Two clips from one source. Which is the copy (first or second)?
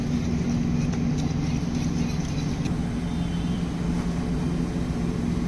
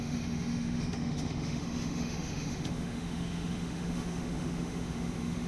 second